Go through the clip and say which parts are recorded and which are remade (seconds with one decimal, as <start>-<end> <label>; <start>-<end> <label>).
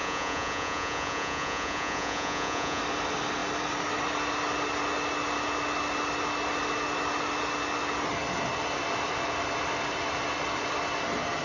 0.0-2.8 remade; 2.8-11.4 recorded